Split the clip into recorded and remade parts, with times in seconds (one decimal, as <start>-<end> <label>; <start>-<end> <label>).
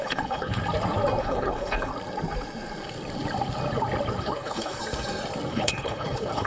0.0-0.6 remade; 0.6-1.2 recorded; 1.2-1.9 remade; 1.9-4.2 recorded; 4.2-4.8 remade; 4.8-5.5 recorded; 5.5-6.5 remade